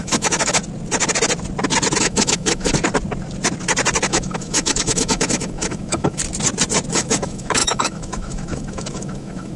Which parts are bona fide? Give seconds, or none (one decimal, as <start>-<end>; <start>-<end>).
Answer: 0.6-2.0; 2.7-4.0; 6.2-6.9

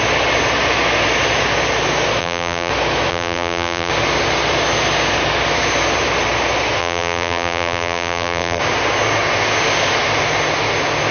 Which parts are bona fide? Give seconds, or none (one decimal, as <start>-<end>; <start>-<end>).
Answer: 0.0-2.2; 2.7-3.1; 3.9-6.8; 8.6-11.1

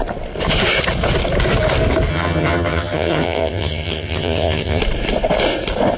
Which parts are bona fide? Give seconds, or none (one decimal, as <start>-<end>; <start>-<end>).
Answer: 0.0-2.1; 4.8-6.0

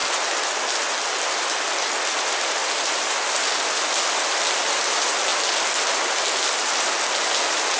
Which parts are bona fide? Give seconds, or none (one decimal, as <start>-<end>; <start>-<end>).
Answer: 0.0-7.8

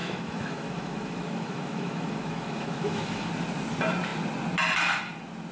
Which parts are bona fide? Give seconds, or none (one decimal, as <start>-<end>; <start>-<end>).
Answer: 3.3-5.5